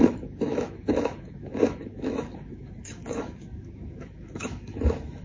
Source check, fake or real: fake